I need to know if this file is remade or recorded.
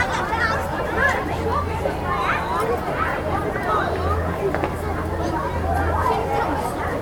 recorded